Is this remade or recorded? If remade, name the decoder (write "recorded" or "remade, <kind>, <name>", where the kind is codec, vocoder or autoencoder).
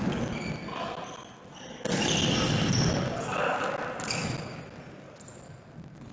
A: recorded